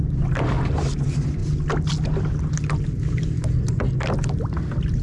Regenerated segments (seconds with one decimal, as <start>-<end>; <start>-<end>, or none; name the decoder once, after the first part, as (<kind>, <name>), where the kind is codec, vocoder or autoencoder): none